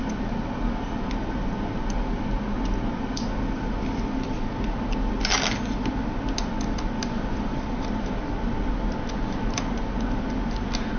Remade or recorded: recorded